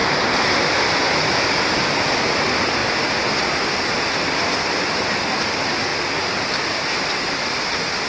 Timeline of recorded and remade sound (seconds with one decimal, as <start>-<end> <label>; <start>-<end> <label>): 0.0-8.1 recorded